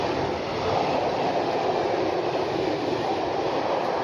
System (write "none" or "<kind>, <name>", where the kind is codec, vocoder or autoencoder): none